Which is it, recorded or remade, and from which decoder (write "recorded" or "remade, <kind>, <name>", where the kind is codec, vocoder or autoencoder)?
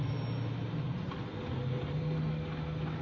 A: recorded